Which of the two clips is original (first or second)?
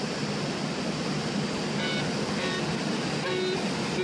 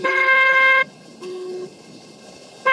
first